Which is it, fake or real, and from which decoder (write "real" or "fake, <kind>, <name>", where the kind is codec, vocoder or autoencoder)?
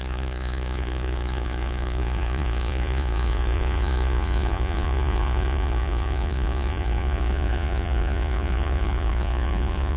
fake, vocoder, Vocos